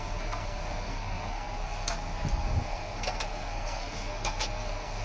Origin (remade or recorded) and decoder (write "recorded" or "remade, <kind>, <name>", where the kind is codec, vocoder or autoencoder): remade, codec, SNAC